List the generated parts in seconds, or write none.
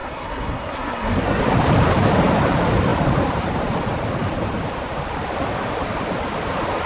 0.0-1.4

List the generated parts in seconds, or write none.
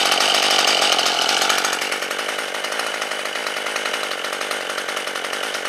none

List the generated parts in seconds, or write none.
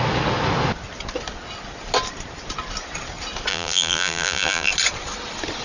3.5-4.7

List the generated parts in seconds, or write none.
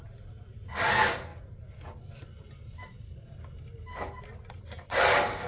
none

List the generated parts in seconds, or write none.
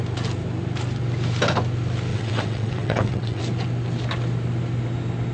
2.1-3.4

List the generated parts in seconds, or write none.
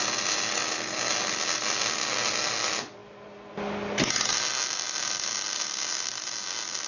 none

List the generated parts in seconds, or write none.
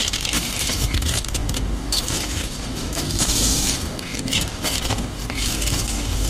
0.0-6.3